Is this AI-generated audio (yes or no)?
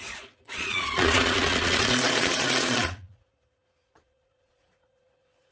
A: yes